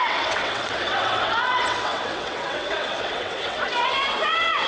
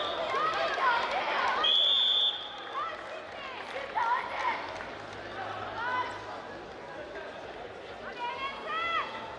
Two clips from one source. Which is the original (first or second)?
second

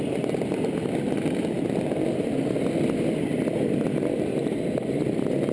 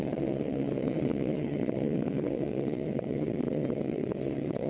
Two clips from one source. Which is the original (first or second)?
first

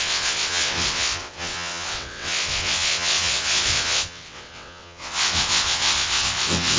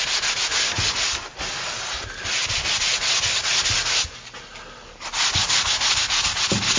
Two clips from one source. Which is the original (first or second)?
second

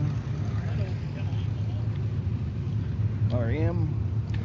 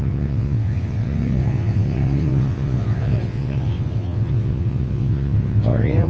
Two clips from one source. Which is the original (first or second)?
first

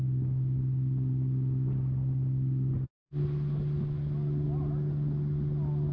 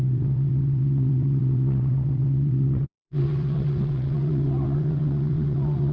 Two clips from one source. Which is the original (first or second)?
first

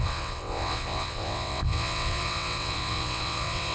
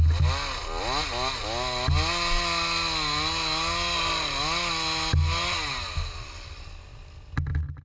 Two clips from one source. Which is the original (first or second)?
second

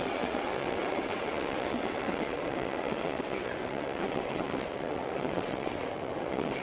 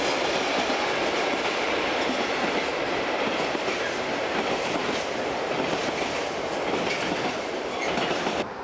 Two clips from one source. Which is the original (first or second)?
second